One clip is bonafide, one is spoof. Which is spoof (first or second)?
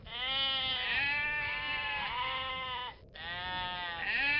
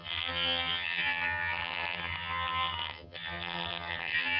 second